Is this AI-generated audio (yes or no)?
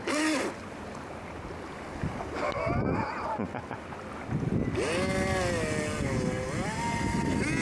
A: no